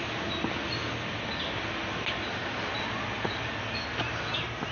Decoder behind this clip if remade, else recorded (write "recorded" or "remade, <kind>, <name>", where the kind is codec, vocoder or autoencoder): recorded